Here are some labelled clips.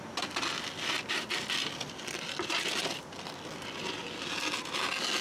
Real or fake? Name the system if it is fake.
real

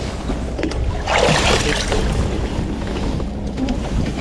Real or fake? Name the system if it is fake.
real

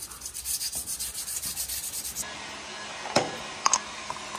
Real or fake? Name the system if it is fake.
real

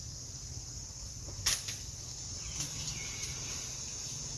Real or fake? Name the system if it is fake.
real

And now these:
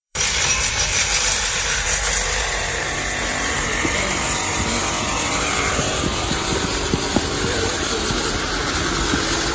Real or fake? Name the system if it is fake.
fake, vocoder, BigVGAN v2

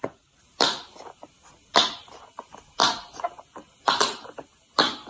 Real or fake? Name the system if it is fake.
real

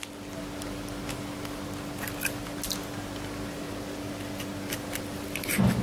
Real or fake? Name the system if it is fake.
real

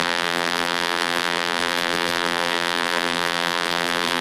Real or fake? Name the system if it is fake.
fake, vocoder, BigVGAN v2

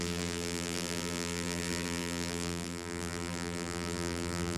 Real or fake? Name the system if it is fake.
fake, vocoder, BigVGAN v2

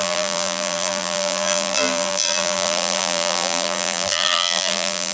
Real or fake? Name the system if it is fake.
fake, vocoder, BigVGAN v2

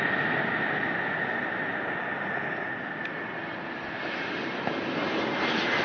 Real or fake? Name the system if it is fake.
real